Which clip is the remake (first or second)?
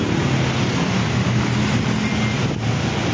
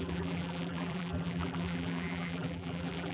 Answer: second